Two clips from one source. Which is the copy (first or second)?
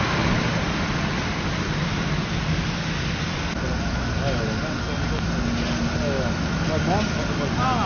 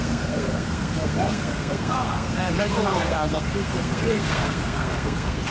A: second